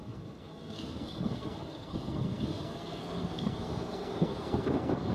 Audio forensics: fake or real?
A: fake